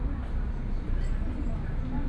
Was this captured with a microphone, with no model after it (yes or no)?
yes